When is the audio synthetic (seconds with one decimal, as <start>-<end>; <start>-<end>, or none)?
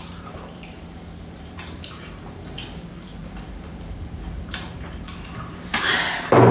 0.0-6.5